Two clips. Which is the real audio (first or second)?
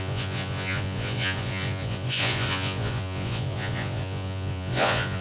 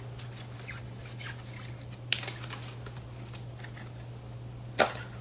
second